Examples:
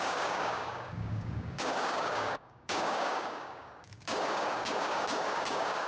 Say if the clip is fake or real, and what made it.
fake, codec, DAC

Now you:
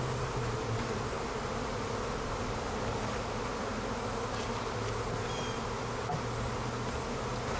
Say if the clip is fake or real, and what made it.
real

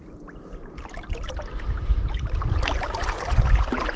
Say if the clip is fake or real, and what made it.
real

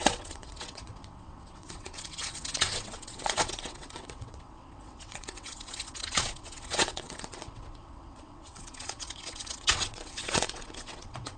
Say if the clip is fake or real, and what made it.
fake, vocoder, WaveNeXt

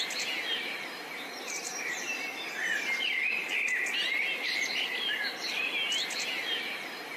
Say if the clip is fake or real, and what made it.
real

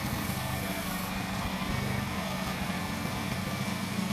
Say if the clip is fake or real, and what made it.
fake, codec, SNAC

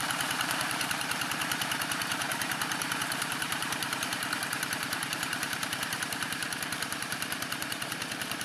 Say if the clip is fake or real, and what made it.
fake, vocoder, BigVGAN v2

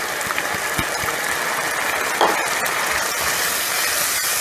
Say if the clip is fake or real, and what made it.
real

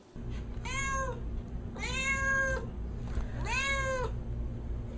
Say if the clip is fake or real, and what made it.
real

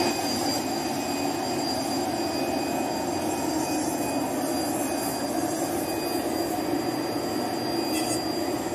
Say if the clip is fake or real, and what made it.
real